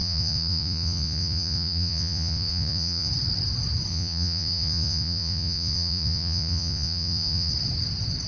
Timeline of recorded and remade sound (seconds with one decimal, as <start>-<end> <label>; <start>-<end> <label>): 0.0-3.1 remade; 3.1-3.9 recorded; 3.9-7.5 remade; 7.5-8.3 recorded